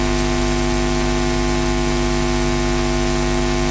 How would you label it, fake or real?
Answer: real